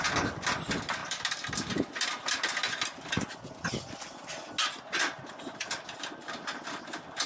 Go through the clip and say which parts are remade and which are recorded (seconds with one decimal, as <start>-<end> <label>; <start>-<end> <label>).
0.0-7.3 recorded